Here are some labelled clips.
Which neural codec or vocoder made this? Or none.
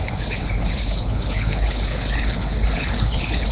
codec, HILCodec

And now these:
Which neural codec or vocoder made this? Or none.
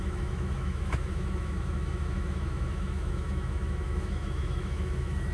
autoencoder, DAC-VAE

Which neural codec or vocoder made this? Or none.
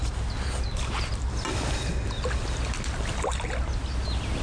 none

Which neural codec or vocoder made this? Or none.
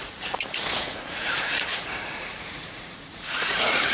vocoder, Vocos